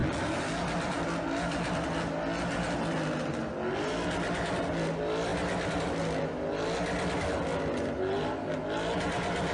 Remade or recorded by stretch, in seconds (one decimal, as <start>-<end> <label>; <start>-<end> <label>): 0.0-9.5 recorded

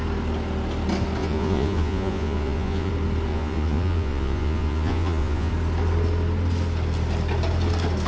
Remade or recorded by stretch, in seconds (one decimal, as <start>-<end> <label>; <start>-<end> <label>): 0.0-1.2 recorded; 1.2-2.9 remade; 2.9-3.3 recorded; 3.3-5.5 remade; 5.5-8.1 recorded

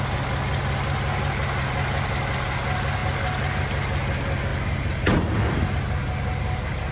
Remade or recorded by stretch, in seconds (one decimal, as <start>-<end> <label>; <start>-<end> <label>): 0.0-3.0 recorded; 3.0-3.6 remade; 3.6-6.9 recorded

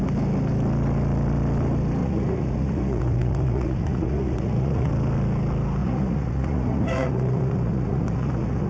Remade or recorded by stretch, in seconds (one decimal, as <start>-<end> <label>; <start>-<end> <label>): 0.0-2.0 recorded; 2.0-4.9 remade; 4.9-5.8 recorded; 5.8-8.7 remade

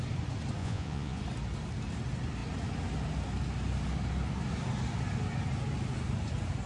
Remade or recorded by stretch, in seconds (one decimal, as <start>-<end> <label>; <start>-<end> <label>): 0.0-0.6 recorded; 0.6-1.2 remade; 1.2-6.7 recorded